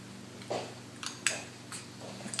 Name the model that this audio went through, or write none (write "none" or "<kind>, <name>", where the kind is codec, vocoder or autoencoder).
none